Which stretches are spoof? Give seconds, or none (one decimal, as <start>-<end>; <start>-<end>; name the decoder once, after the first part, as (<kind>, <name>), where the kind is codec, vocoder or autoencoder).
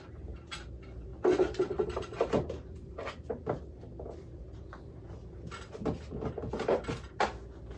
1.1-4.7 (vocoder, BigVGAN v2)